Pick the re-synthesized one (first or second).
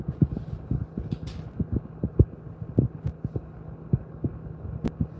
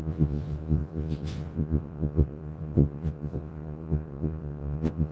second